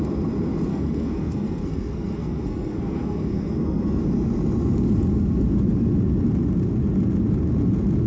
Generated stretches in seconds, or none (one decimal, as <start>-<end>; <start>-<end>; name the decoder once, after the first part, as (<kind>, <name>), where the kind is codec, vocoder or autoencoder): 0.7-4.0 (codec, SNAC)